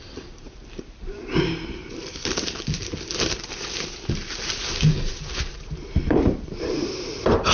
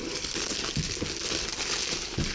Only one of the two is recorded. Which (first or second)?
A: second